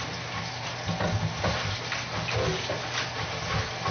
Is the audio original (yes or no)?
yes